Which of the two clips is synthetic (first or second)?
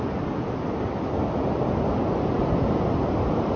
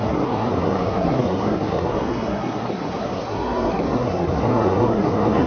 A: second